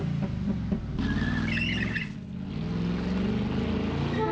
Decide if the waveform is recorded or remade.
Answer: recorded